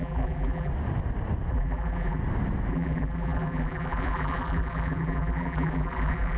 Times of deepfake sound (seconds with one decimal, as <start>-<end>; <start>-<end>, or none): 0.0-0.7; 1.5-2.2; 2.7-6.4